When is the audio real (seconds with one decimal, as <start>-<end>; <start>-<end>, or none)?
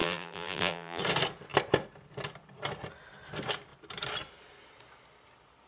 1.0-5.7